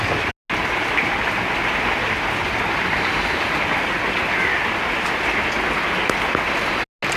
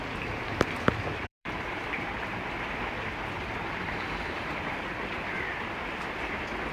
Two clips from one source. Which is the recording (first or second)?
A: first